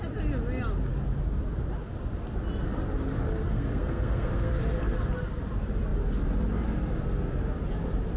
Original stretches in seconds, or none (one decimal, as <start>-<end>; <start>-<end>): 0.0-3.5; 4.5-8.2